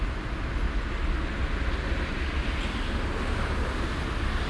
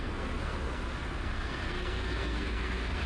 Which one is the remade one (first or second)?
second